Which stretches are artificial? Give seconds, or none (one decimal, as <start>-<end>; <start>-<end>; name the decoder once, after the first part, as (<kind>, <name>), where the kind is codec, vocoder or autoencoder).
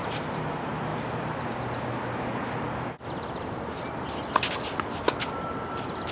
none